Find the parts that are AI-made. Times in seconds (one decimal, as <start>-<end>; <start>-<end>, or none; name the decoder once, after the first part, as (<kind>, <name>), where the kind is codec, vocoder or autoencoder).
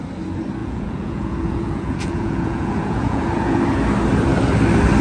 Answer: 0.6-3.6 (vocoder, Vocos)